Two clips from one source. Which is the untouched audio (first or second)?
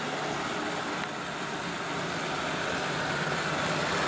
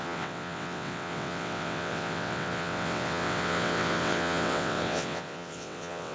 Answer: first